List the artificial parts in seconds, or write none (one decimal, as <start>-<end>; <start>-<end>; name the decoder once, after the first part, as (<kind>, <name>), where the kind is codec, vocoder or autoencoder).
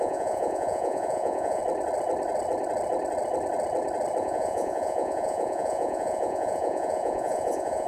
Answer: 0.0-1.6 (vocoder, Vocos); 4.2-7.9